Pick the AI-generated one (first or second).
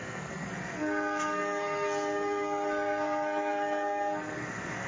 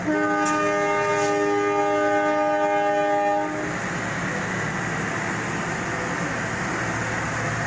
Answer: first